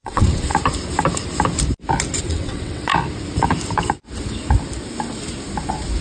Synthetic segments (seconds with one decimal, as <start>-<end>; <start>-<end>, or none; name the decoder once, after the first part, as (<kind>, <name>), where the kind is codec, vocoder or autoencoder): 0.0-0.5 (vocoder, WaveNeXt); 2.2-2.9

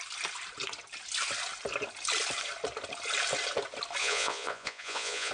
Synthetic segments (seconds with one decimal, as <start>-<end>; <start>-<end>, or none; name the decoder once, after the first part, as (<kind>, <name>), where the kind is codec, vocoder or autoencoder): 4.0-5.3 (vocoder, Vocos)

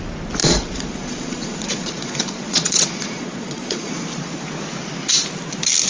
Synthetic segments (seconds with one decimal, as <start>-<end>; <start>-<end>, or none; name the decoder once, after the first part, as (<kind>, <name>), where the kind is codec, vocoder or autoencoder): 0.4-3.9 (vocoder, Vocos)

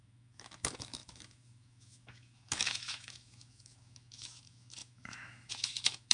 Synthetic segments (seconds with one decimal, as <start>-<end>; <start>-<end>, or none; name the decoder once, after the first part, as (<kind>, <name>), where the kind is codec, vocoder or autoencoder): 0.0-6.1 (autoencoder, DAC-VAE)

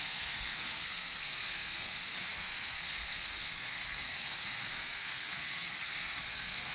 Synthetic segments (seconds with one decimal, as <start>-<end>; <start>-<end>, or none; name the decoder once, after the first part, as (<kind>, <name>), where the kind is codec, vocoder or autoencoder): 0.0-6.7 (codec, SNAC)

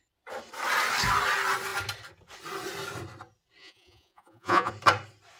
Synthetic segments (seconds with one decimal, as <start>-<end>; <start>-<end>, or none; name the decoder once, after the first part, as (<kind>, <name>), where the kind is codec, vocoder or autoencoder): 3.6-4.7 (vocoder, Vocos)

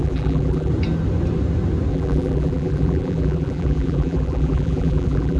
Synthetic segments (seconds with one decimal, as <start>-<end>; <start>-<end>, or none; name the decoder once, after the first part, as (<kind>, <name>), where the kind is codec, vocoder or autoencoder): 0.0-0.7 (vocoder, BigVGAN v2); 1.9-5.4

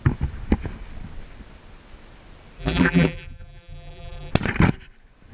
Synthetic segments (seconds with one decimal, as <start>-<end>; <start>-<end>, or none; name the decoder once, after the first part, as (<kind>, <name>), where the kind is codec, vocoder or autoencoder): 2.6-4.3 (vocoder, BigVGAN v2)